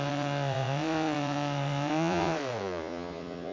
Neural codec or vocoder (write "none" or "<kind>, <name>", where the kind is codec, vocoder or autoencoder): vocoder, Vocos